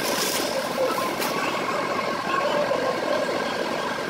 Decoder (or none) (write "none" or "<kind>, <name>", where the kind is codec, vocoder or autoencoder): vocoder, BigVGAN v2